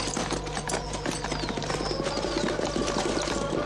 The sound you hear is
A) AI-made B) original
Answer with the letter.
B